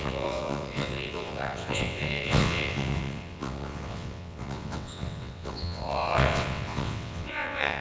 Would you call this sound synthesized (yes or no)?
yes